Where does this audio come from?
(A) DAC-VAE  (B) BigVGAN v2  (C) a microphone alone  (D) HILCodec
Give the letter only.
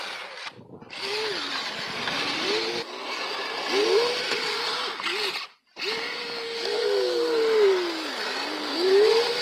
C